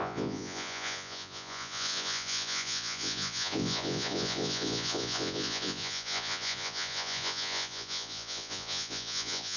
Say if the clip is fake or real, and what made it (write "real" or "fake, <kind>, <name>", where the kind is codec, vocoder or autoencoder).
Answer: fake, vocoder, Vocos